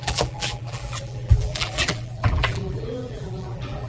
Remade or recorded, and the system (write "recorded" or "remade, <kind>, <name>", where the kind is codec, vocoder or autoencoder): remade, vocoder, BigVGAN v2